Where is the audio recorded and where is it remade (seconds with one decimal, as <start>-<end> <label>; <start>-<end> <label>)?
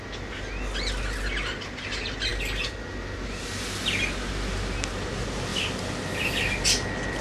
0.0-7.2 recorded